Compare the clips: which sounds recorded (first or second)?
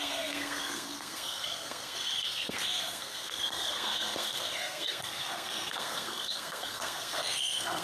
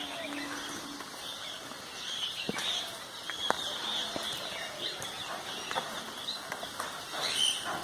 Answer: second